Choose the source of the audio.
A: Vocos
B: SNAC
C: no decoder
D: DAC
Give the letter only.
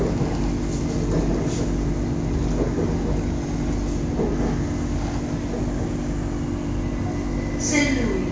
C